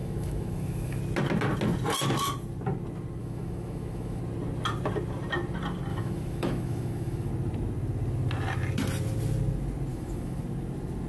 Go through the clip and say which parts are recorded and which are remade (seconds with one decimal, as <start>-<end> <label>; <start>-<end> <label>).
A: 0.0-1.0 remade; 1.0-3.2 recorded; 3.2-4.2 remade; 4.2-5.9 recorded; 5.9-7.3 remade; 7.3-9.9 recorded; 9.9-10.4 remade; 10.4-11.1 recorded